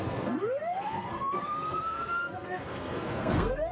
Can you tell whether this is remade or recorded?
remade